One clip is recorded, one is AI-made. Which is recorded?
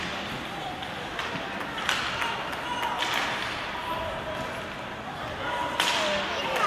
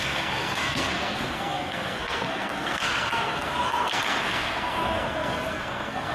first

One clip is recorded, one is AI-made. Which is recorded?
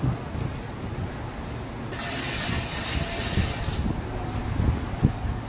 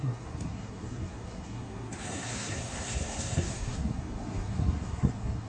first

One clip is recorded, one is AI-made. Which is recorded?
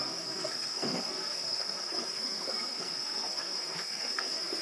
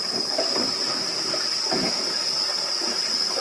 second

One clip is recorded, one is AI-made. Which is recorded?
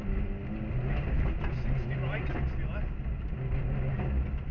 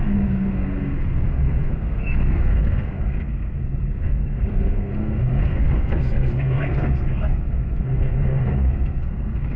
first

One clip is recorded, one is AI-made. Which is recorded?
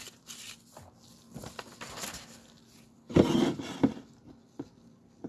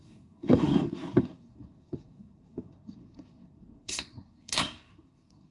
first